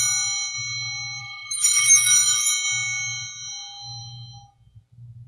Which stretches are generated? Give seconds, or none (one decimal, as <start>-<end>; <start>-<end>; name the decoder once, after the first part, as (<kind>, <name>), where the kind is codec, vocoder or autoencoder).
1.2-2.5 (autoencoder, DAC-VAE)